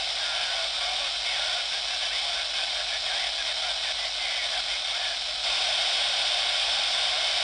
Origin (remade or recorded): recorded